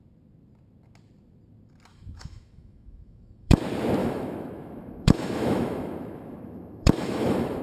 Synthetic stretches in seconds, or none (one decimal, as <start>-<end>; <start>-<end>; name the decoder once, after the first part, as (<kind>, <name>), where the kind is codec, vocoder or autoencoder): 1.9-3.6 (autoencoder, DAC-VAE); 4.0-7.6